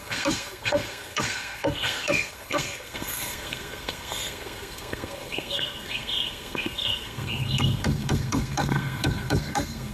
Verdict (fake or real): fake